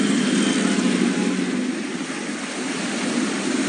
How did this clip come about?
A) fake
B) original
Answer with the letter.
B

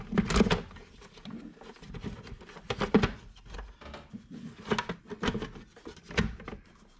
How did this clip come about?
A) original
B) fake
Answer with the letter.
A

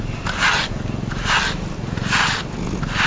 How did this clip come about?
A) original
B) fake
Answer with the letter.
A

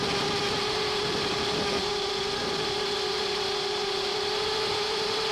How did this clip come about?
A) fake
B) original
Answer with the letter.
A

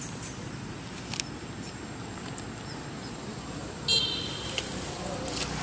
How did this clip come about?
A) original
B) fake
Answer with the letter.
A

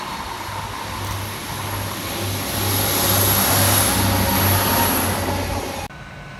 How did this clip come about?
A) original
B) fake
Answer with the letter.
A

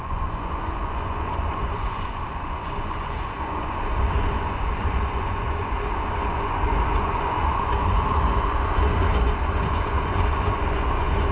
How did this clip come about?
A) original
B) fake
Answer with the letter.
B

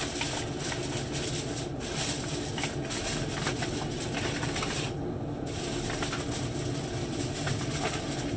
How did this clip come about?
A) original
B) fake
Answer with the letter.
A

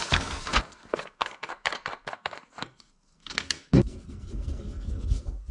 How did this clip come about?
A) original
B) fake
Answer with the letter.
B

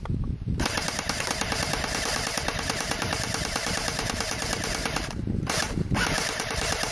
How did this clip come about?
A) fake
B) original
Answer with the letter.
A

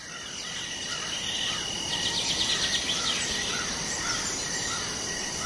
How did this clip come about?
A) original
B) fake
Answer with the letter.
A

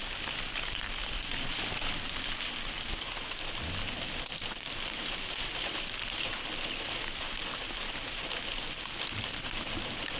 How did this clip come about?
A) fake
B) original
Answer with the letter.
B